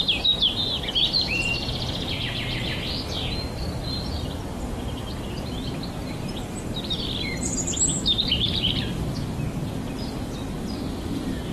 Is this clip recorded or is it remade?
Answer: remade